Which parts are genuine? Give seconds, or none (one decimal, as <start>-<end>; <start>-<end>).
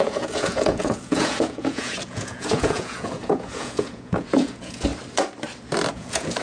4.9-5.9